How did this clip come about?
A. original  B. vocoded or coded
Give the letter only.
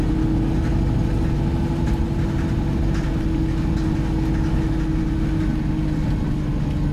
A